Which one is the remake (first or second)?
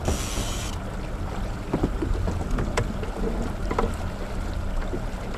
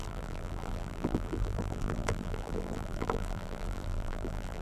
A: second